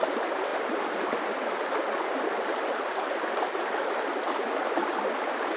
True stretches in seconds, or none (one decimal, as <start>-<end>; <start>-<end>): 0.0-0.5; 3.9-5.6